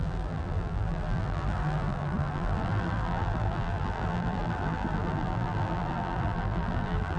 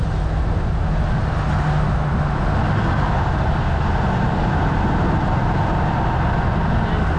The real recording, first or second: second